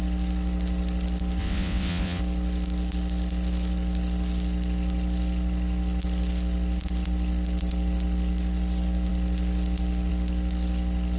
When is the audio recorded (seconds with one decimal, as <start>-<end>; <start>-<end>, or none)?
0.0-1.4; 2.2-11.2